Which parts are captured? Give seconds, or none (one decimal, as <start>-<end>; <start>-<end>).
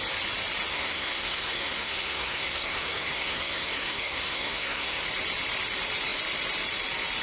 0.0-0.7; 5.0-7.2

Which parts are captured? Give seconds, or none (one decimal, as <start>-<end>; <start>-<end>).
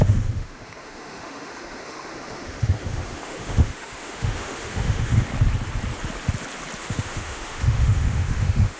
5.3-6.8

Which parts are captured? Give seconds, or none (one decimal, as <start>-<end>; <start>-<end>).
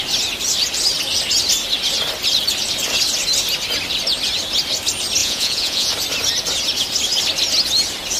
0.0-5.2; 5.9-8.2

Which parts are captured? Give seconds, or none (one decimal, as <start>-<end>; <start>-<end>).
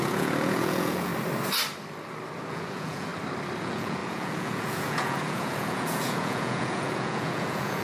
1.1-2.5; 3.1-3.6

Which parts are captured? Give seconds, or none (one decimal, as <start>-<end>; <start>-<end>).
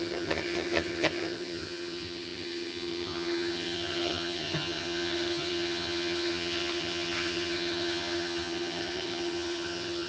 none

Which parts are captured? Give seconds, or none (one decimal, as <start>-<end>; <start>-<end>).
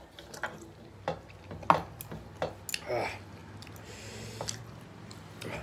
0.0-5.6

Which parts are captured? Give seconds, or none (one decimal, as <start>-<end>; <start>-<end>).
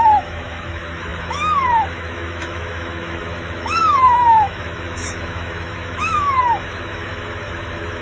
none